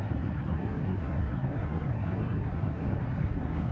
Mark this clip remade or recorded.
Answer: remade